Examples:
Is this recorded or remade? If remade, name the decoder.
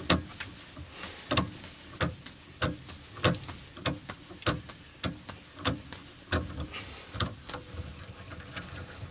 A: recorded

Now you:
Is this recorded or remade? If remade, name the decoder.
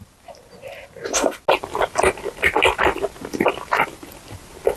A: recorded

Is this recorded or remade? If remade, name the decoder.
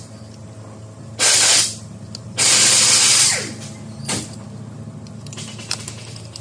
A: recorded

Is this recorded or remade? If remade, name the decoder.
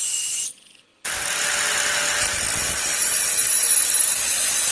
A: recorded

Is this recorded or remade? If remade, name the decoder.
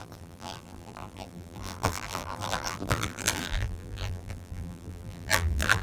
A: remade, vocoder, BigVGAN v2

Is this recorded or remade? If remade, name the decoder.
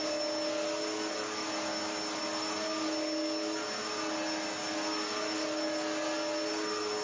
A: recorded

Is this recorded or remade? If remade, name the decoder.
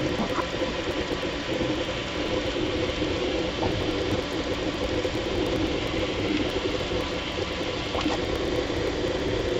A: recorded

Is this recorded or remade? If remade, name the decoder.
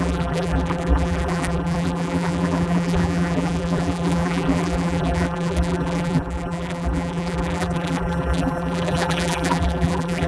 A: remade, vocoder, BigVGAN v2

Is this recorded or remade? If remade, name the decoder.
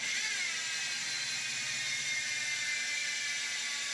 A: recorded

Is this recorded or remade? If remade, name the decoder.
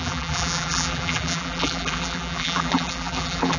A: remade, vocoder, BigVGAN v2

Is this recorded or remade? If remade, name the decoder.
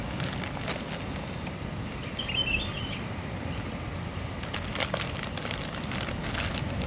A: recorded